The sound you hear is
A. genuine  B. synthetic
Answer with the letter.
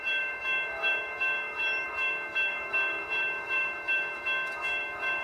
B